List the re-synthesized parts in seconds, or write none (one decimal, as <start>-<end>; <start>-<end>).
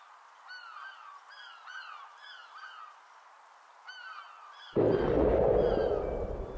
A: none